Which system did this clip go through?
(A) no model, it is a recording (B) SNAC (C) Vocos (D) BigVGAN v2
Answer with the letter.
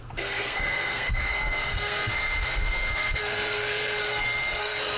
B